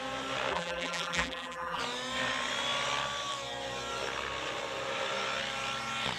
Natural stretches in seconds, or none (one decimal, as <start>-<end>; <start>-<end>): 0.0-0.5; 1.8-6.2